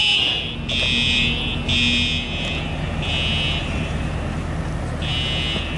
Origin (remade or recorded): recorded